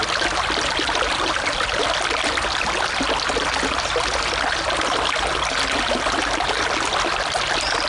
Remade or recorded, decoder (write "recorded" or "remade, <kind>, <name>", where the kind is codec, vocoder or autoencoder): recorded